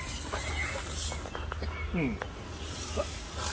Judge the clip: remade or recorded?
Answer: recorded